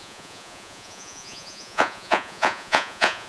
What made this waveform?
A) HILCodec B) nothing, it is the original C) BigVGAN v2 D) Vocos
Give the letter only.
D